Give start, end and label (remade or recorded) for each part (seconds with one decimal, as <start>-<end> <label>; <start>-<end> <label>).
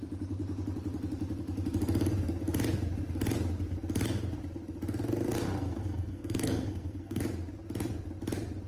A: 0.0-5.6 recorded; 5.6-7.2 remade; 7.2-8.7 recorded